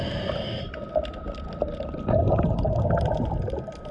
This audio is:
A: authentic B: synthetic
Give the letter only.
A